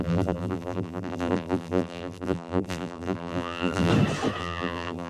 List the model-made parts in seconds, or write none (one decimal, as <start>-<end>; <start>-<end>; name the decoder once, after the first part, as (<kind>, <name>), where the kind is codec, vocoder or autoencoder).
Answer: 0.0-3.9 (vocoder, BigVGAN v2); 4.4-5.1